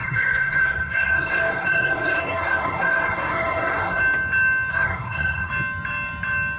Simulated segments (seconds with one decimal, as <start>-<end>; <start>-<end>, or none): 0.0-4.0; 4.7-5.5